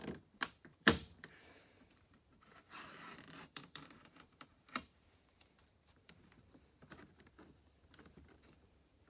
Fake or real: fake